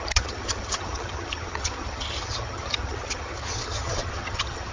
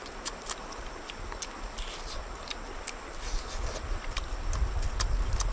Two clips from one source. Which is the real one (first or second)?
second